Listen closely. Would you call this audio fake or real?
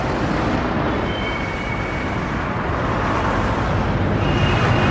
fake